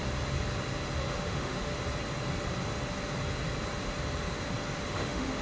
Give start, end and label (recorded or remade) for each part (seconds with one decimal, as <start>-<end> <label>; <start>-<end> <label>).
0.0-1.1 recorded; 1.1-1.7 remade; 1.7-4.9 recorded; 4.9-5.4 remade